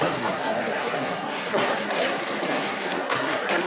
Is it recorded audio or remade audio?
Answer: remade